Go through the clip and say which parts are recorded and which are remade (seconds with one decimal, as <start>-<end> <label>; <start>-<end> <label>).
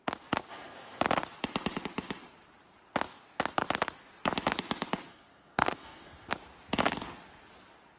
0.0-0.5 recorded; 0.5-1.0 remade; 1.0-5.1 recorded; 5.1-6.3 remade; 6.3-8.0 recorded